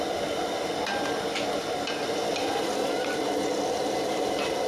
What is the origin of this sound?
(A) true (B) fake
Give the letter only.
A